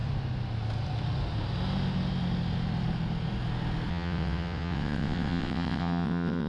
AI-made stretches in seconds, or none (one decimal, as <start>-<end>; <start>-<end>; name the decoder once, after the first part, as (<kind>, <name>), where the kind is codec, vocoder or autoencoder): 3.9-6.5 (vocoder, WaveNeXt)